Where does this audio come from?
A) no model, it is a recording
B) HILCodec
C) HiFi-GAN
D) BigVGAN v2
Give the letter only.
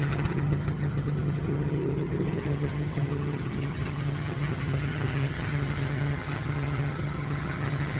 C